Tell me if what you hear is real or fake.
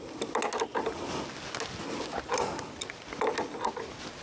real